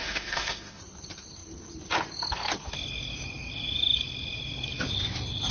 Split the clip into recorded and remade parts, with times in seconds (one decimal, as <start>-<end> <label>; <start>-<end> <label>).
0.0-0.8 remade; 0.8-5.5 recorded